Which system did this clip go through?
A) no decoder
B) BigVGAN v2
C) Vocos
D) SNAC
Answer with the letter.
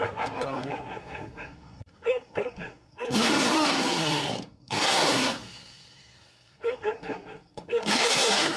D